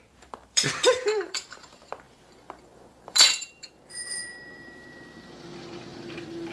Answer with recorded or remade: remade